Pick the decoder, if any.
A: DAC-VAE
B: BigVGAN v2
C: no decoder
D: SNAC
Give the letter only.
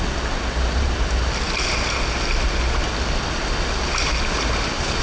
C